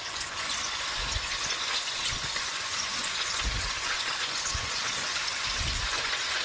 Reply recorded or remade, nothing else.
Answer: remade